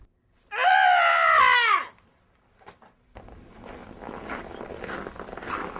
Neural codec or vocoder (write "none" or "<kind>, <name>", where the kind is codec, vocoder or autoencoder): none